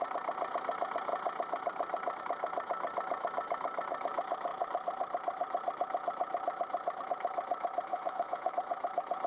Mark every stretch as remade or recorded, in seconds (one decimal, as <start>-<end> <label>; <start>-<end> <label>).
0.0-7.9 recorded; 7.9-8.5 remade; 8.5-9.3 recorded